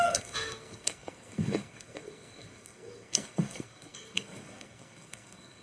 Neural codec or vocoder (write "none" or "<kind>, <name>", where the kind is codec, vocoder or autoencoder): codec, SNAC